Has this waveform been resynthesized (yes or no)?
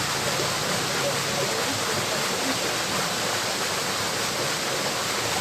no